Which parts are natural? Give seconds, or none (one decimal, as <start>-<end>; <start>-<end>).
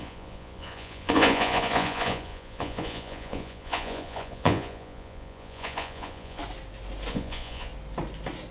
6.4-7.1; 7.7-8.5